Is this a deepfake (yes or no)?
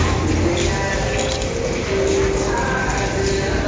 no